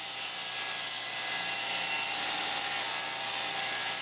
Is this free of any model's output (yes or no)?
yes